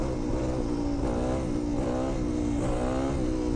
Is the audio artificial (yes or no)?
no